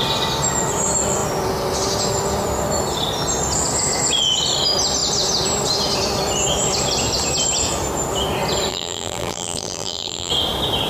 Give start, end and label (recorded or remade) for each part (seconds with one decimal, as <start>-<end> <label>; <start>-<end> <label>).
0.0-8.7 recorded; 8.7-10.3 remade; 10.3-10.9 recorded